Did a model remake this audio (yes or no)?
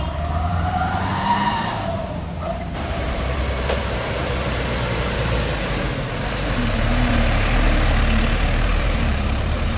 yes